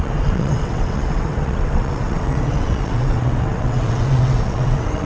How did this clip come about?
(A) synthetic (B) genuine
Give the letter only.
A